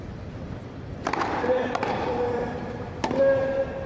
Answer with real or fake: fake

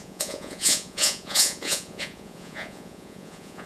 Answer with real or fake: fake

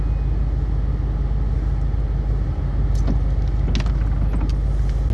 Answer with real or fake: real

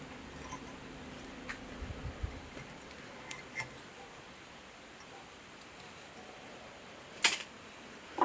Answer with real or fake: real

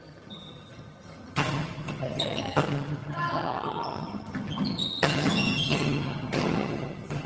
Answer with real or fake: fake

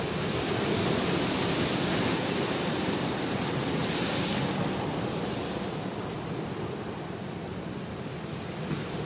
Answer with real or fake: fake